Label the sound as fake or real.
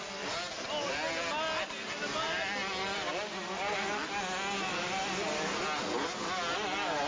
real